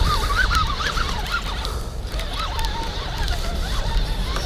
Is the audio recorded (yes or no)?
yes